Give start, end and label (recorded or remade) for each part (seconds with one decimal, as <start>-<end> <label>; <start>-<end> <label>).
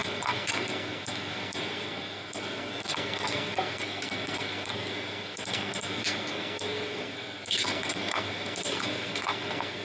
0.0-9.8 remade